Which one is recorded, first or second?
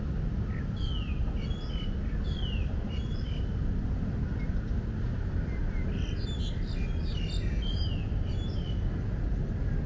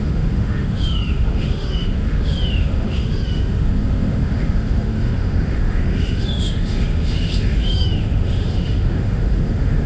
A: first